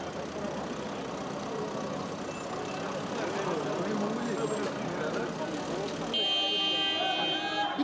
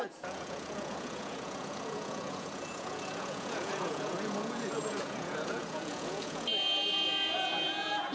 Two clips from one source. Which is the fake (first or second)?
second